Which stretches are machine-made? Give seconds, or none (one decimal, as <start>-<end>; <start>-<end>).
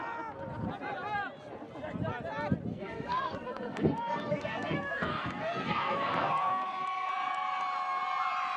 2.7-7.1